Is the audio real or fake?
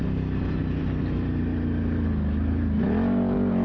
real